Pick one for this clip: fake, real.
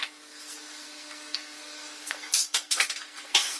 fake